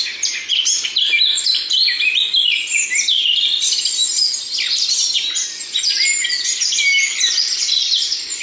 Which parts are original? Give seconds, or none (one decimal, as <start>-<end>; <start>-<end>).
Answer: 0.0-8.4